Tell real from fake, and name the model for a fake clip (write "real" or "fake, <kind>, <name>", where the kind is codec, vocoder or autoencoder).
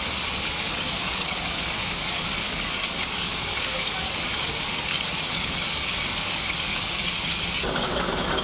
fake, codec, DAC